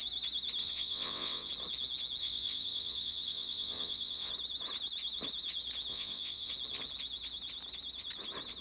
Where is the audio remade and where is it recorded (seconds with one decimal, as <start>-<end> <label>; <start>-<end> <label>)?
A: 0.0-0.6 recorded; 0.6-1.5 remade; 1.5-2.2 recorded; 2.2-4.3 remade; 4.3-5.9 recorded; 5.9-6.5 remade; 6.5-8.6 recorded